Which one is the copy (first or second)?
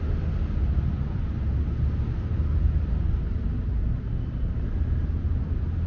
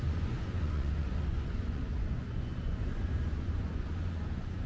second